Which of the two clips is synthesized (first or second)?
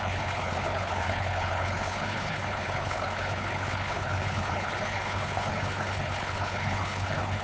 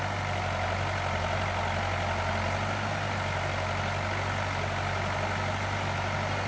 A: first